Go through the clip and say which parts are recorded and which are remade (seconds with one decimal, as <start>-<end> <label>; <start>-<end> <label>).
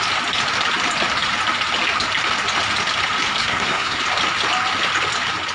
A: 0.0-3.4 recorded; 3.4-4.0 remade; 4.0-5.5 recorded